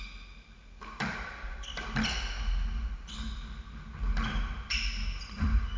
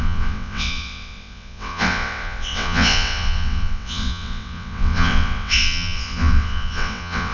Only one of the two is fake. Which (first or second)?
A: second